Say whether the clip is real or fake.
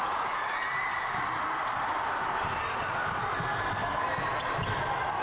real